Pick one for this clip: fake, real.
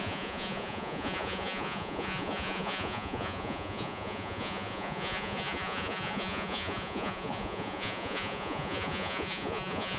fake